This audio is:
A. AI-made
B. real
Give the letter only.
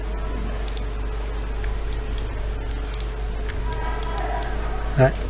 B